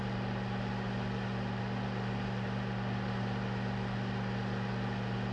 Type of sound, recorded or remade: recorded